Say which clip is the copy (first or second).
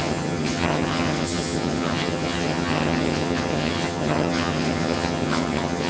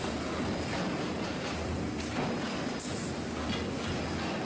first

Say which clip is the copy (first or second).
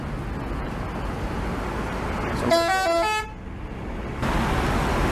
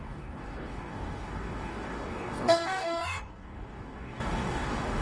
second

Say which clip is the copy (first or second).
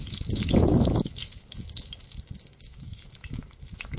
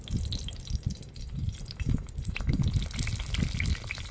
first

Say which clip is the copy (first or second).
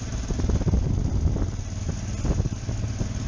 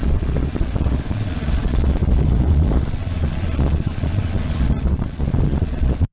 second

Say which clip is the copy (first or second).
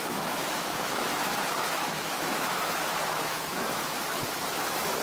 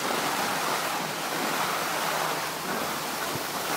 first